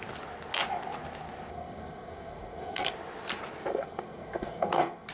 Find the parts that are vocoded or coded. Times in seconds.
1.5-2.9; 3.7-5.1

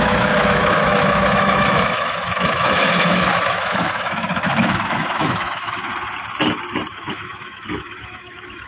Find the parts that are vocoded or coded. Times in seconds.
0.0-5.9; 6.9-8.7

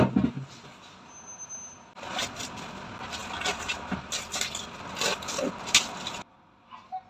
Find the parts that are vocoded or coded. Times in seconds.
none